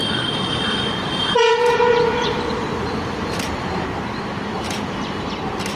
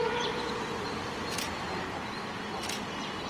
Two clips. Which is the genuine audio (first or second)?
second